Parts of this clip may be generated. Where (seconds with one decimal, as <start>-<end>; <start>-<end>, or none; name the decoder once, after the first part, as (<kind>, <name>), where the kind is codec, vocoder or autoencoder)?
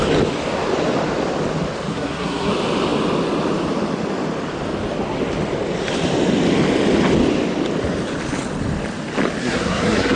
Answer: 1.9-2.5 (codec, SNAC); 9.4-10.2